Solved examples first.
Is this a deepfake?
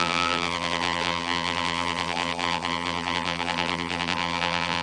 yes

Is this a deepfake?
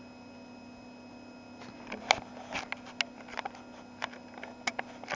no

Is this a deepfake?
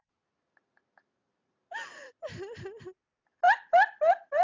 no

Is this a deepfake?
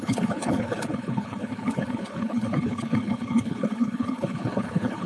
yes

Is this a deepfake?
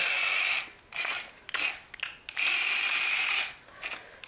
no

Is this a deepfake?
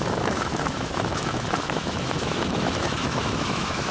yes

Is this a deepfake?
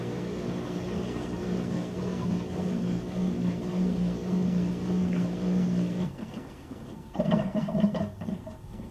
yes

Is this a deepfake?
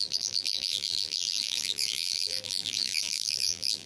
yes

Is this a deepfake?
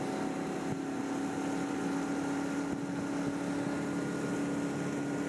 no